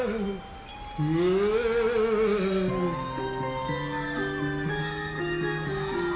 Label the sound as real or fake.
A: real